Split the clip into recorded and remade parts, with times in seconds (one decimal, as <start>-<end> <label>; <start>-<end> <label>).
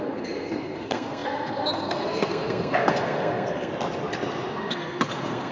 0.0-3.7 remade; 3.7-4.5 recorded; 4.5-5.5 remade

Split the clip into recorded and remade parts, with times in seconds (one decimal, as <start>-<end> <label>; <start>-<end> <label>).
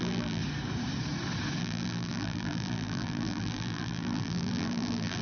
0.0-0.4 remade; 0.4-1.6 recorded; 1.6-5.2 remade